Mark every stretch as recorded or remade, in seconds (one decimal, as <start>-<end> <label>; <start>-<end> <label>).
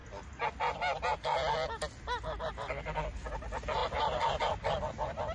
0.0-3.8 recorded; 3.8-4.4 remade; 4.4-5.3 recorded